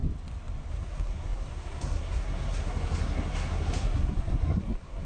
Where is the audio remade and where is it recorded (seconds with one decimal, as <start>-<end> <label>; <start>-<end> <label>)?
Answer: 0.0-0.7 recorded; 0.7-5.1 remade